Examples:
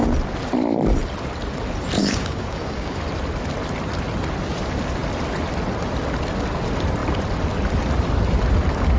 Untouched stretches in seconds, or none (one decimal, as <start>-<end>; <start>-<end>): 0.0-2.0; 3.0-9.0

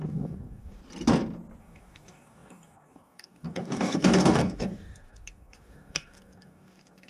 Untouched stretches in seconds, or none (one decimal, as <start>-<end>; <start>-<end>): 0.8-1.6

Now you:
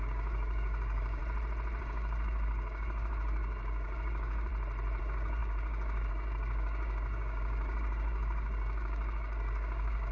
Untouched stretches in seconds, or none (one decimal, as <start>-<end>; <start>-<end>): 1.2-1.8; 4.5-5.0